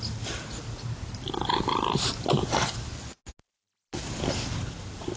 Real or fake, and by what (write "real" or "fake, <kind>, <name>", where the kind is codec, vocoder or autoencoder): real